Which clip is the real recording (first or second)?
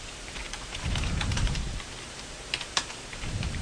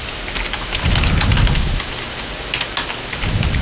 second